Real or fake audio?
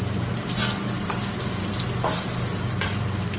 real